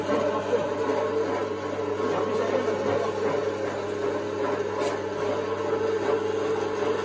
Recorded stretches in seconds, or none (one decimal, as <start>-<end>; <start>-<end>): 0.0-7.0